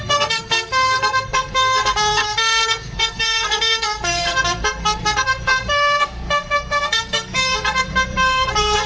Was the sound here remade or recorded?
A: remade